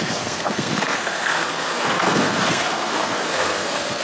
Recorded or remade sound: remade